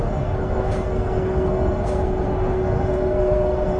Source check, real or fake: fake